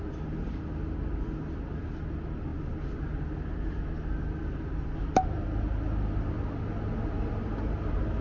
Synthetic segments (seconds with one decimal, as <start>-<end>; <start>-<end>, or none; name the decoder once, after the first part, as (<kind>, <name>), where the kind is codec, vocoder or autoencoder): none